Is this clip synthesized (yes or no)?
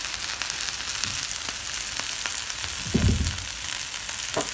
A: no